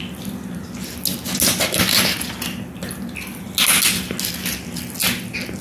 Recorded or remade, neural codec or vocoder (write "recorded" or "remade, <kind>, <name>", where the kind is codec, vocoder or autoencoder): recorded